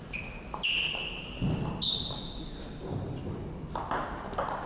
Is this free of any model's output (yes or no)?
yes